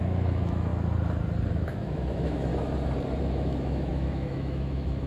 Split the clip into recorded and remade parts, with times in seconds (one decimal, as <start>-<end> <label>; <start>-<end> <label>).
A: 0.0-0.7 remade; 0.7-1.5 recorded; 1.5-2.5 remade; 2.5-3.2 recorded; 3.2-5.1 remade